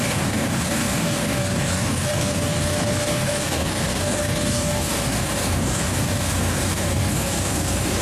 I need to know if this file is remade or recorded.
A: remade